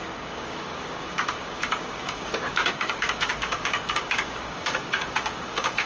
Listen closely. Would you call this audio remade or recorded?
remade